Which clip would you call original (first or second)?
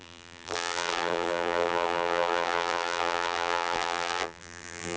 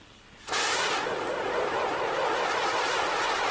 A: second